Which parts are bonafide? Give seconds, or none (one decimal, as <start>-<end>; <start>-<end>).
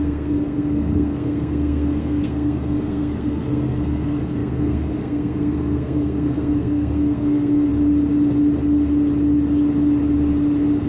7.7-10.9